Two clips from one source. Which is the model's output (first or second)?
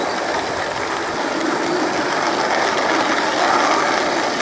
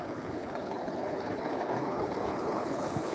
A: second